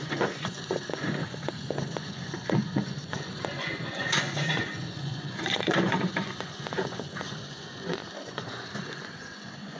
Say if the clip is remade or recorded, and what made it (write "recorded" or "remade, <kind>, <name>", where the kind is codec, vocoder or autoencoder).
remade, vocoder, Vocos